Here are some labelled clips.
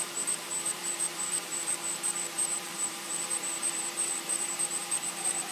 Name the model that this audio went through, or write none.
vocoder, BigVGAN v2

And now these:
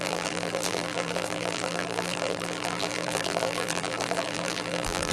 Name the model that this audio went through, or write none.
vocoder, BigVGAN v2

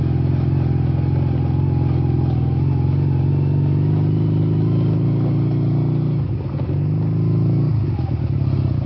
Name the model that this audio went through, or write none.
none